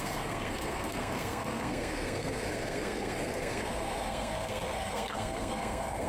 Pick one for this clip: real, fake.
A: fake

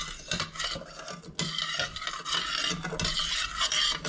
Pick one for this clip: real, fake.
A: real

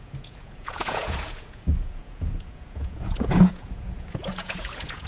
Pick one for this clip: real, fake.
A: fake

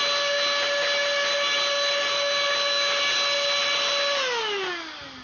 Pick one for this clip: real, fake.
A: real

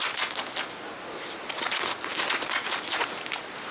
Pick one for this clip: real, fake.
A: real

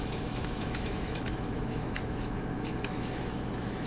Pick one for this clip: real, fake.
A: fake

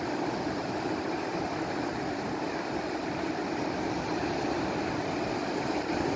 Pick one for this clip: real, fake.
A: real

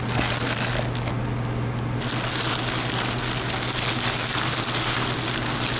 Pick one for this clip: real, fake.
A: real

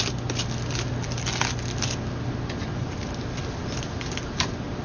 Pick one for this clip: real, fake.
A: real